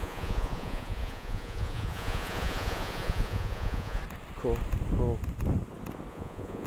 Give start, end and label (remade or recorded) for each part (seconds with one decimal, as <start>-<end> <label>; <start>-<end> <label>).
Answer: 0.0-4.0 remade; 4.0-6.1 recorded; 6.1-6.7 remade